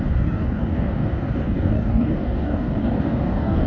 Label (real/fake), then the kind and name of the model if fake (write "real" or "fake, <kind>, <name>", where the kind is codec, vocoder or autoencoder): fake, codec, DAC